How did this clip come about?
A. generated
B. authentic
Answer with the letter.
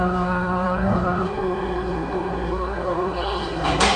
A